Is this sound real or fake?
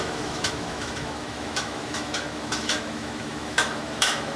fake